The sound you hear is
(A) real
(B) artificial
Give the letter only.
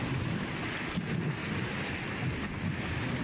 A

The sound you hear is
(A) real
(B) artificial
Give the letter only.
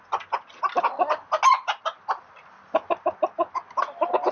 A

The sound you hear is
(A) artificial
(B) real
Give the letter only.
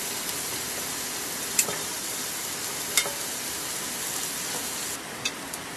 B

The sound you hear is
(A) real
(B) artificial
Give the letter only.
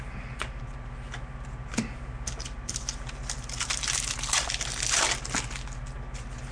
A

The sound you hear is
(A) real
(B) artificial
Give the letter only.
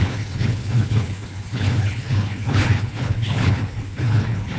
B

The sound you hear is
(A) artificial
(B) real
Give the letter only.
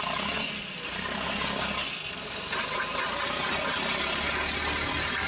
B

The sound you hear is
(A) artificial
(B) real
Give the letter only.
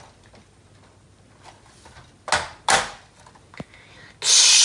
B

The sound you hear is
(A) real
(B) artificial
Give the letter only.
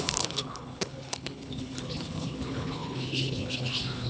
B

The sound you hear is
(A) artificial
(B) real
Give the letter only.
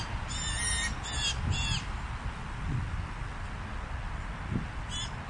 B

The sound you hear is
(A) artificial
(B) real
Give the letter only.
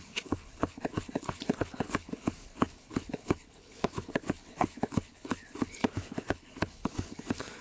A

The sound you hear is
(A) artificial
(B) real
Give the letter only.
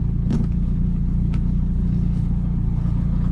A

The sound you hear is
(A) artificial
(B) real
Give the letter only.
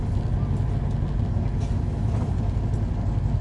B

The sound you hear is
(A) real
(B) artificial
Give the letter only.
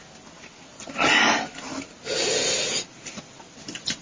A